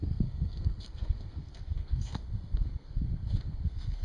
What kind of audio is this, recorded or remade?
remade